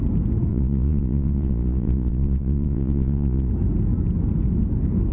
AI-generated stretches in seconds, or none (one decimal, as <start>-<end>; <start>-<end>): 0.5-3.5